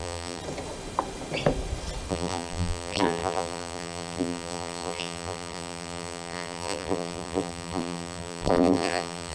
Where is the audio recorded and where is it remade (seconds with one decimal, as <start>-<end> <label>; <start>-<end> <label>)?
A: 0.0-0.4 remade; 0.4-2.1 recorded; 2.1-9.3 remade